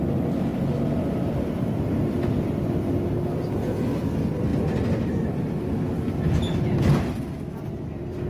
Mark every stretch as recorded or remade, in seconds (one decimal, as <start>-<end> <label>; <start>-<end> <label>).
0.0-8.3 recorded